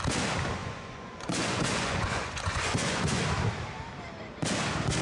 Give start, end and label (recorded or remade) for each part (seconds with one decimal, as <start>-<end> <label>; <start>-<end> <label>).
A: 0.0-0.6 recorded; 0.6-3.2 remade; 3.2-5.0 recorded